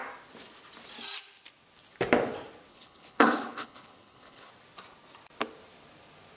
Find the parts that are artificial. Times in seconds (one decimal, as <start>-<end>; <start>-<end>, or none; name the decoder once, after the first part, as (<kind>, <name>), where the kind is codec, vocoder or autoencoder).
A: 2.7-4.5 (codec, HILCodec)